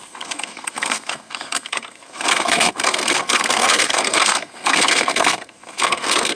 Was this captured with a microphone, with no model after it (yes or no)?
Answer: no